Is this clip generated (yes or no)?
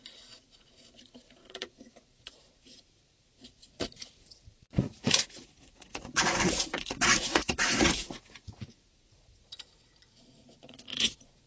yes